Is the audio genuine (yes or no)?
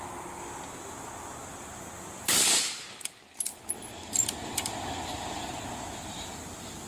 no